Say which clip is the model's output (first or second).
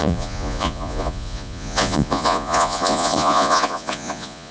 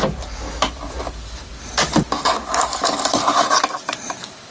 first